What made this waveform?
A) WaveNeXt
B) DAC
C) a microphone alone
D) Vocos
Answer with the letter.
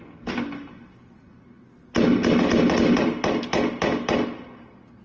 C